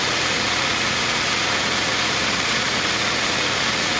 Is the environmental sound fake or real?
fake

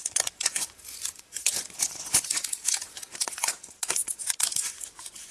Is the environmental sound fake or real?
fake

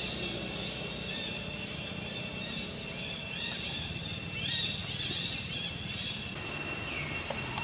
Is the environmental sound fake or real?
real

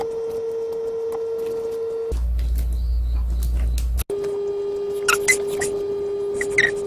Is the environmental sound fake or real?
real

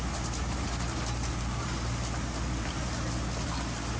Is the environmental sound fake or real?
real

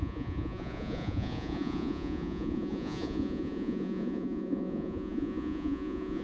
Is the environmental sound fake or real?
fake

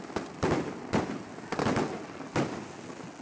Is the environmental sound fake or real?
real